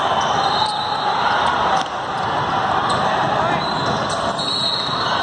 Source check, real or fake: real